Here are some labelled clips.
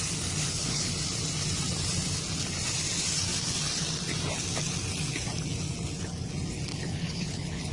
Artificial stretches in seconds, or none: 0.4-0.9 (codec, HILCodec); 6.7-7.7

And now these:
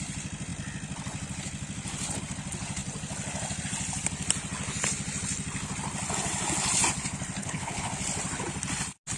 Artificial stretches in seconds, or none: 7.4-7.9 (codec, HILCodec)

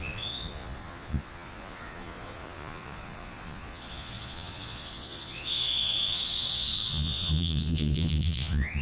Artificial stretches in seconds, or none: 0.0-8.8 (vocoder, Vocos)

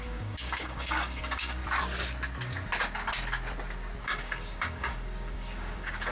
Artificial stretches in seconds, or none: 0.0-1.6 (codec, DAC); 4.0-6.1

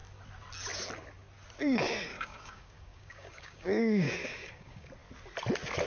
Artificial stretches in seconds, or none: 2.1-4.9 (codec, DAC)

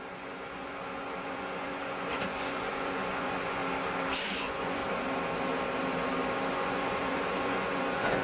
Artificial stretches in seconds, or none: 0.0-3.6 (vocoder, Vocos); 4.2-4.8; 6.5-8.2

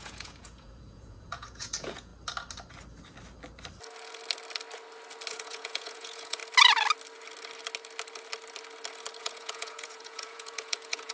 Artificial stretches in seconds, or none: 0.0-2.1 (vocoder, Vocos); 5.3-6.4; 9.2-11.1